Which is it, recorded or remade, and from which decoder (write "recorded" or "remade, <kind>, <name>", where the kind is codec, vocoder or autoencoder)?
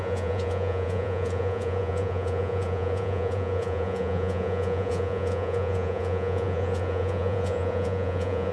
remade, vocoder, Vocos